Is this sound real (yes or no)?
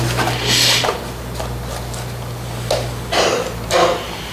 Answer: yes